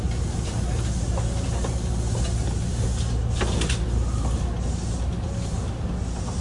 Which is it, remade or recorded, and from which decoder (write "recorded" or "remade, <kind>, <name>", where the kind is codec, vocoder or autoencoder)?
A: recorded